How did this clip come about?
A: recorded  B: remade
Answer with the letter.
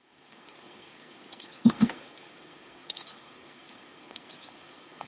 B